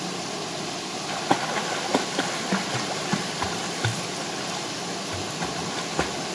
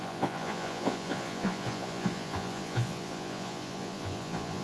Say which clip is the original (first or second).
first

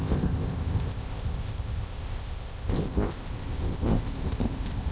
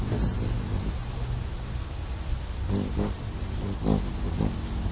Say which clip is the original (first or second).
second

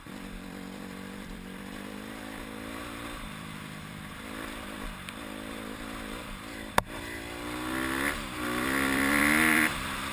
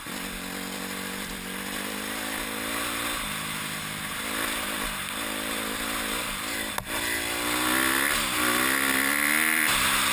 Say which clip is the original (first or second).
second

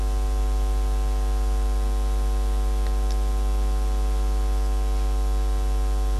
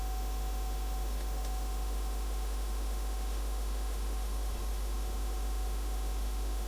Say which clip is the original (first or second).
first